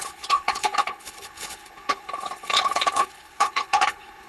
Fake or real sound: fake